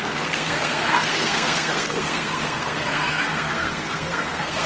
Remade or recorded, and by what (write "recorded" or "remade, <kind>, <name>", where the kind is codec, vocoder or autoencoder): remade, codec, SNAC